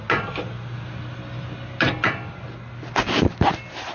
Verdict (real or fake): real